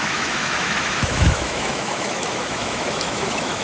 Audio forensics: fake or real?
fake